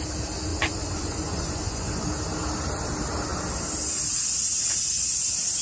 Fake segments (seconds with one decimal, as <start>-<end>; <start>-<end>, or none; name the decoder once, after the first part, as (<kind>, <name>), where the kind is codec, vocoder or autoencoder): 0.5-2.2 (vocoder, Vocos)